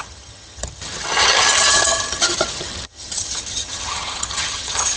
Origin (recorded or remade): remade